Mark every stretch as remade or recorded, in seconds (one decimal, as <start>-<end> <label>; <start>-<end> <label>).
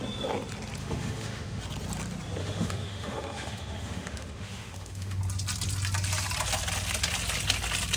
0.0-0.8 recorded; 0.8-1.6 remade; 1.6-2.4 recorded; 2.4-5.2 remade; 5.2-8.0 recorded